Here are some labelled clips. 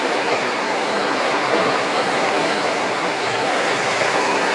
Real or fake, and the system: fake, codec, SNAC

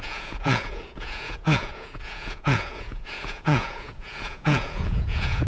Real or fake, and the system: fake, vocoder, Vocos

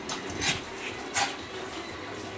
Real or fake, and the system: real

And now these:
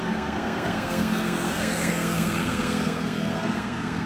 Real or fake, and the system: fake, codec, SNAC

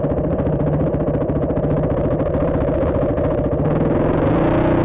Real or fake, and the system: real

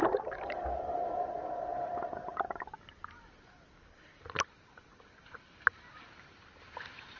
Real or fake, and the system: real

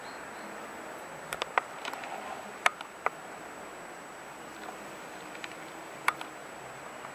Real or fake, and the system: real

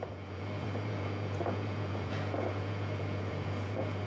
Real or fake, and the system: fake, vocoder, Vocos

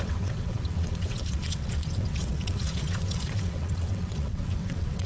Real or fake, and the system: fake, vocoder, WaveNeXt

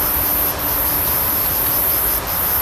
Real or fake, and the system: real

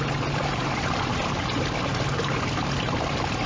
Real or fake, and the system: real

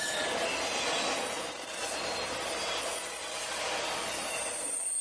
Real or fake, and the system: real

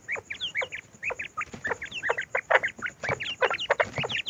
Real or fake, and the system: real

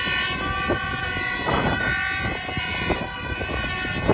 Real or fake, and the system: real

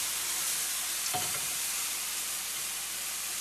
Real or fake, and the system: real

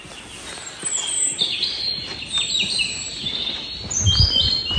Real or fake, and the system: real